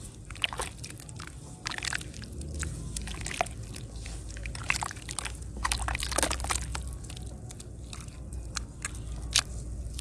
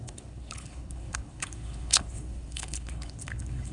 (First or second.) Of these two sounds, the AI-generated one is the second